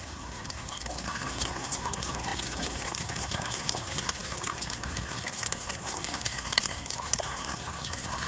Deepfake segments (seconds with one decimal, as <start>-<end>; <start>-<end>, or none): 0.0-8.3